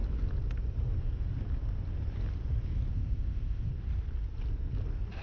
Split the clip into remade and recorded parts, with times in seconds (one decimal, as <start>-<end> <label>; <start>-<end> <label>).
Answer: 0.0-2.9 recorded; 2.9-3.7 remade; 3.7-5.2 recorded

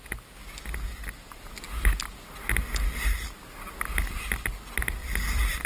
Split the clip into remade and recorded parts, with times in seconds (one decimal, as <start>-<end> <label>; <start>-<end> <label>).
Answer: 0.0-5.0 recorded; 5.0-5.7 remade

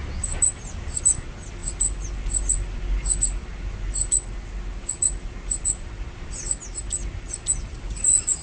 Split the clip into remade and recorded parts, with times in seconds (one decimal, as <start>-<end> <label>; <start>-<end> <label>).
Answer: 0.0-8.4 recorded